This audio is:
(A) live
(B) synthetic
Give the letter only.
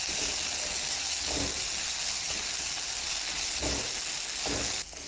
A